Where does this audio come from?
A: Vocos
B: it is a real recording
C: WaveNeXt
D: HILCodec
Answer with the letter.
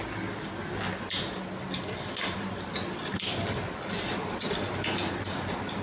B